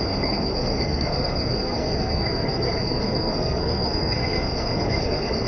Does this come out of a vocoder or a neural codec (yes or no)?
yes